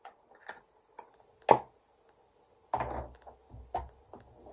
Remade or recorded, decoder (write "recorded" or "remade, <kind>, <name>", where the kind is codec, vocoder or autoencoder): recorded